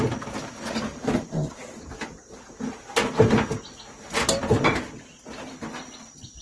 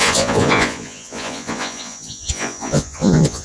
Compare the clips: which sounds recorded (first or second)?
first